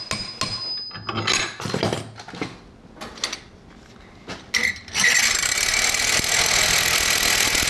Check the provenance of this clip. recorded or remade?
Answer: recorded